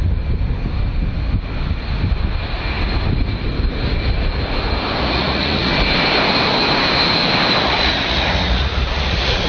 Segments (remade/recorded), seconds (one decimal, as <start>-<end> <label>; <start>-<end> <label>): 0.0-5.0 recorded; 5.0-5.7 remade; 5.7-7.6 recorded; 7.6-9.5 remade